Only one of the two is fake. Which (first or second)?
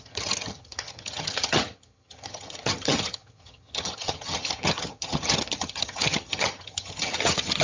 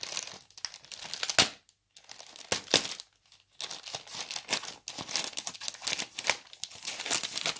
first